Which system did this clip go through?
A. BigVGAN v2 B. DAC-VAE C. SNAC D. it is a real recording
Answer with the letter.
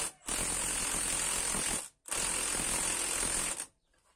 D